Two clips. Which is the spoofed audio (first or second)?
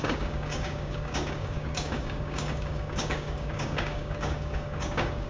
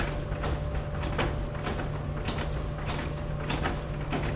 first